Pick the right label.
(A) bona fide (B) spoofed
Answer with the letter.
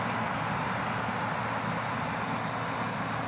A